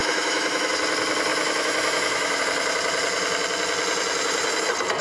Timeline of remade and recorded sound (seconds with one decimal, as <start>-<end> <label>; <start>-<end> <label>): 0.0-0.7 remade; 0.7-1.3 recorded; 1.3-2.4 remade; 2.4-5.0 recorded